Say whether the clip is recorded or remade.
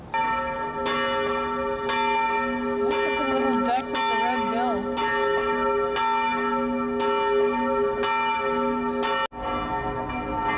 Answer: recorded